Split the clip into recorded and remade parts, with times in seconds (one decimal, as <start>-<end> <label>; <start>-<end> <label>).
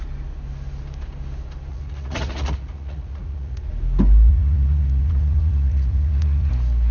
0.0-1.7 recorded; 1.7-3.7 remade; 3.7-4.3 recorded; 4.3-6.5 remade; 6.5-6.9 recorded